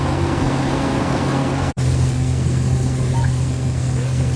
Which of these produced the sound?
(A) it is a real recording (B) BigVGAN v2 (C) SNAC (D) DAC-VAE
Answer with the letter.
C